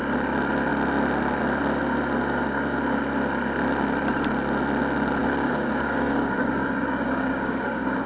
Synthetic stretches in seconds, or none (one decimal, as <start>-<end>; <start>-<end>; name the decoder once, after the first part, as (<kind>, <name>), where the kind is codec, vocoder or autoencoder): 5.2-8.1 (codec, DAC)